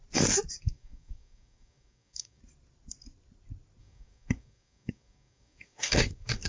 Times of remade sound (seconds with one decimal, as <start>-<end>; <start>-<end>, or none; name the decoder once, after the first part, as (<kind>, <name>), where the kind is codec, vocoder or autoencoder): 0.6-2.4 (codec, DAC); 3.8-6.5